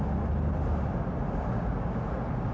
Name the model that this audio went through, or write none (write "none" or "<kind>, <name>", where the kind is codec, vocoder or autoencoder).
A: none